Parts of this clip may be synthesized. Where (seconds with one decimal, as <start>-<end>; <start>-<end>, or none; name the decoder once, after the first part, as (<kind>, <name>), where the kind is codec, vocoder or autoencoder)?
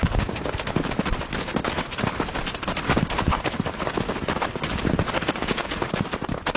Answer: none